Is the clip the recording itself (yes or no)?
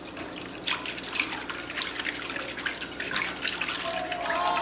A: yes